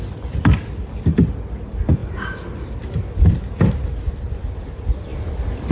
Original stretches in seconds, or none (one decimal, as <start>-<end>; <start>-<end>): 0.0-5.7